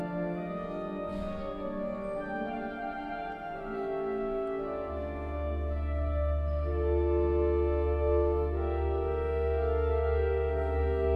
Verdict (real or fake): real